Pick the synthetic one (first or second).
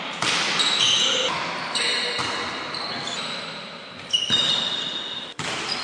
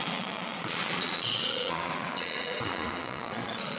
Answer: second